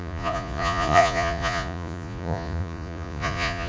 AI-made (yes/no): yes